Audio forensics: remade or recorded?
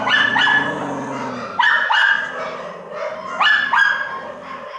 recorded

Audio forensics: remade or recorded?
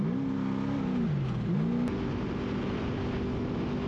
recorded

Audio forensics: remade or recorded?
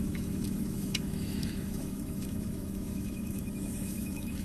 remade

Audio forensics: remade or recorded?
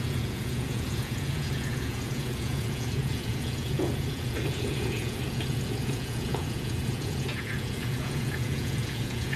remade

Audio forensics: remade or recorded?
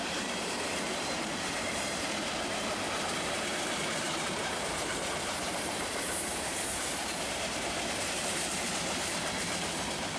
remade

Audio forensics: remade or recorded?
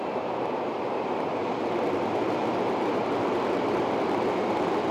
recorded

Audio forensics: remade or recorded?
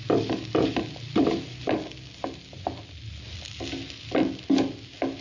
recorded